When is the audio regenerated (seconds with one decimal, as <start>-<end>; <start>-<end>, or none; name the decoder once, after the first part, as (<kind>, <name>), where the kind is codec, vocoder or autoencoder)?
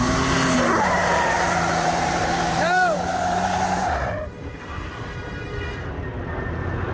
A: 1.1-4.1 (vocoder, BigVGAN v2)